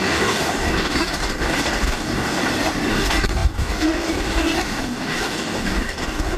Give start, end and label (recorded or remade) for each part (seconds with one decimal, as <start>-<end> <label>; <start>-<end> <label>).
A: 0.0-2.4 remade; 2.4-2.9 recorded; 2.9-6.4 remade